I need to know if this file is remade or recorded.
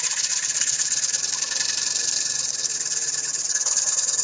remade